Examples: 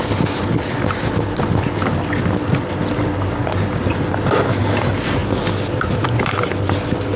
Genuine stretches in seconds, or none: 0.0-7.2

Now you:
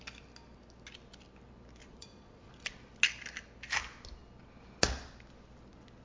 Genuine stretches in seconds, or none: 0.0-1.8; 2.5-6.0